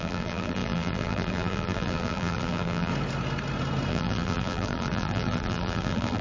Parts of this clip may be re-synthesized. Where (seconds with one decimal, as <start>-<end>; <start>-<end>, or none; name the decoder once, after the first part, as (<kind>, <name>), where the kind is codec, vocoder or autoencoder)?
0.0-2.9 (vocoder, BigVGAN v2); 3.9-6.2